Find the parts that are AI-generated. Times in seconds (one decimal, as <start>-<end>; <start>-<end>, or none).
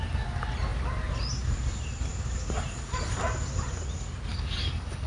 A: 4.3-5.1